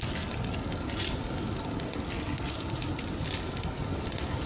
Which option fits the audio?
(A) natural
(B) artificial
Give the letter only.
A